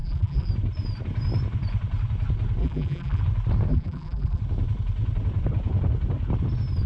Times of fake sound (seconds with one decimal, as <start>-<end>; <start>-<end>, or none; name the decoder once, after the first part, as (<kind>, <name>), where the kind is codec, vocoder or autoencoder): 0.0-0.5 (vocoder, BigVGAN v2); 2.6-3.2; 3.7-4.4

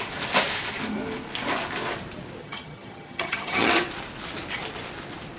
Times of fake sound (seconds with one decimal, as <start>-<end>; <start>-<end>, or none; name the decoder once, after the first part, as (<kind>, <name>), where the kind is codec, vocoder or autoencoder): 2.4-3.7 (vocoder, HiFi-GAN)